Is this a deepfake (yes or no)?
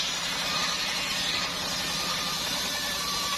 no